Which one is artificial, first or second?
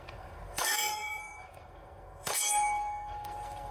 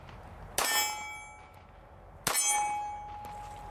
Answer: first